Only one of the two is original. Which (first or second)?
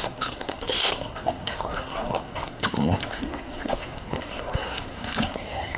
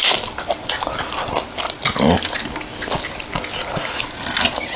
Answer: second